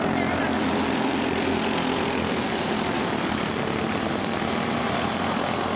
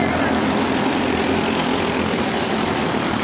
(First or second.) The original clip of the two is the first